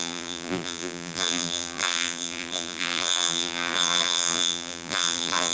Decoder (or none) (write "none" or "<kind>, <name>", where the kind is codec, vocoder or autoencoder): vocoder, BigVGAN v2